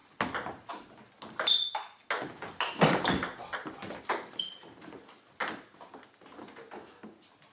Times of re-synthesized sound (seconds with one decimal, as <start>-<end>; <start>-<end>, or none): none